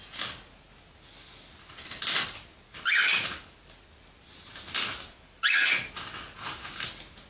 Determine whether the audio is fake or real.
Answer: real